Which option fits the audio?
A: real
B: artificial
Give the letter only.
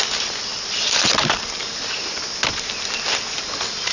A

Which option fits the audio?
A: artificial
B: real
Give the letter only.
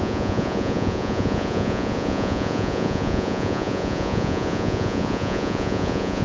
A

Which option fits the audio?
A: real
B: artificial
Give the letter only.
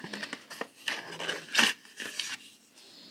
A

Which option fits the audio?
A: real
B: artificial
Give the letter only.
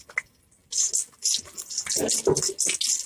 A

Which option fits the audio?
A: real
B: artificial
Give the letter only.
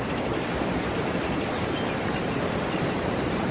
A